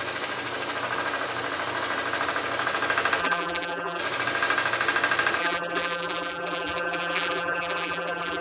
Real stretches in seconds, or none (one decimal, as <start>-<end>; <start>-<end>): 0.0-3.2; 4.0-5.4